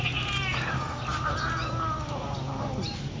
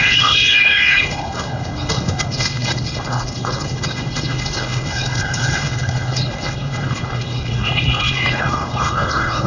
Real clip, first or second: first